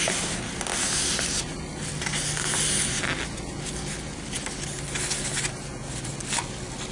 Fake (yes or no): no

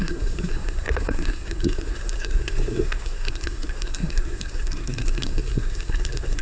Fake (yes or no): yes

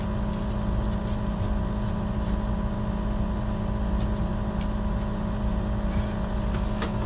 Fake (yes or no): no